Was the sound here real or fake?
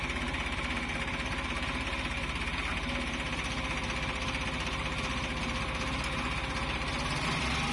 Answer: real